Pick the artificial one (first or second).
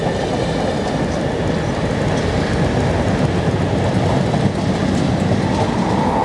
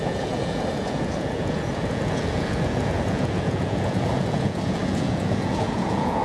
second